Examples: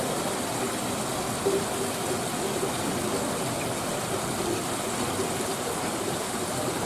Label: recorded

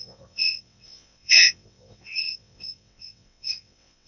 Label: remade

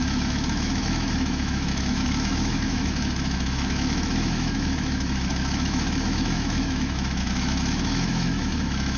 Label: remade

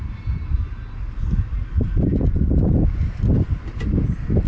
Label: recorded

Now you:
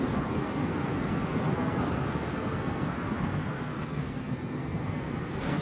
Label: remade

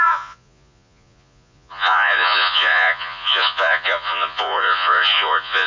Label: remade